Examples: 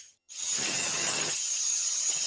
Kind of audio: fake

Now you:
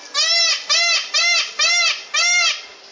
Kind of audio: real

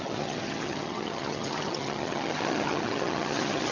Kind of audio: fake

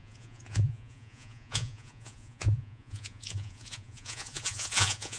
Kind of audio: fake